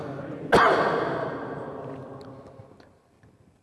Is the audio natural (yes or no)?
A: yes